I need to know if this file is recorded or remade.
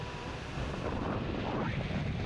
recorded